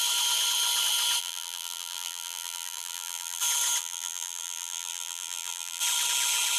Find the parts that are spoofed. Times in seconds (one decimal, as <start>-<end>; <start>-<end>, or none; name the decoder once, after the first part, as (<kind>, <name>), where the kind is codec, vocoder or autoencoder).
1.2-3.4 (vocoder, BigVGAN v2); 3.8-5.8